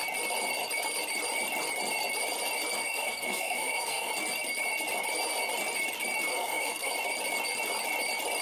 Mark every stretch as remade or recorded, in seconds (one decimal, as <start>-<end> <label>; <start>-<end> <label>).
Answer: 0.0-2.8 recorded; 2.8-4.1 remade; 4.1-6.3 recorded; 6.3-6.9 remade; 6.9-8.4 recorded